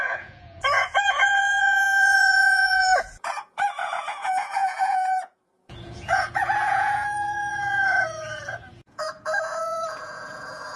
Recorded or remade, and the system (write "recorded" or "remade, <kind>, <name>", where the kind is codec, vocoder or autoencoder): remade, vocoder, Vocos